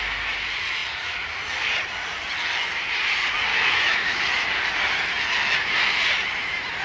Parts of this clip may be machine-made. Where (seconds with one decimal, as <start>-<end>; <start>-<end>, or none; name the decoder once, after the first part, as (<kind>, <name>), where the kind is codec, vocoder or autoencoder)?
3.5-4.2 (autoencoder, DAC-VAE)